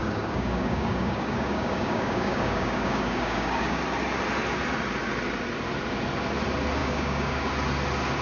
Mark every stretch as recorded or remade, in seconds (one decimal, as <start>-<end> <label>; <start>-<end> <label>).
0.0-3.8 remade; 3.8-6.8 recorded; 6.8-7.5 remade; 7.5-8.2 recorded